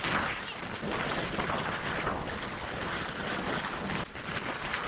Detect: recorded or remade recorded